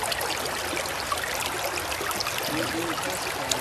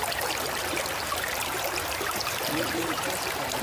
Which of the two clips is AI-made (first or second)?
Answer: second